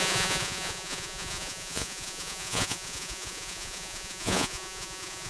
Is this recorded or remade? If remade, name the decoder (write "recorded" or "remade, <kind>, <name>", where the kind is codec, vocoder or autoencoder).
remade, vocoder, Vocos